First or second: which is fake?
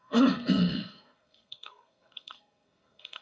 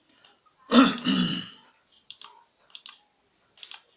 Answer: first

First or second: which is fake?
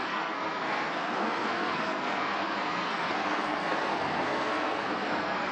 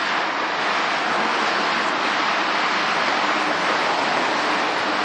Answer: first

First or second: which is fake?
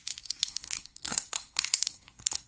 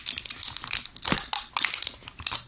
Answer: first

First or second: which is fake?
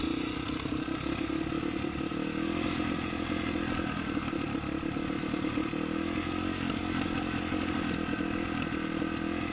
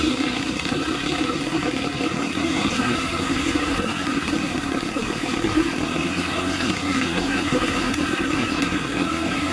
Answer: second